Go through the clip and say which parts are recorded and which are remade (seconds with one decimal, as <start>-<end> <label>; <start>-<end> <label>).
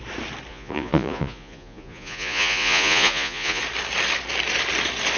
0.0-0.5 recorded; 0.5-3.6 remade; 3.6-5.2 recorded